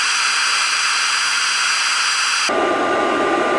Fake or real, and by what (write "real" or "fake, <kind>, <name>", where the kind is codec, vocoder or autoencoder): real